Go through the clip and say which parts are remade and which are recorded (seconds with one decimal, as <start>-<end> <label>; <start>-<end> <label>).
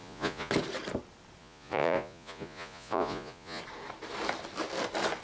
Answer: 0.0-0.5 remade; 0.5-1.4 recorded; 1.4-3.6 remade; 3.6-5.2 recorded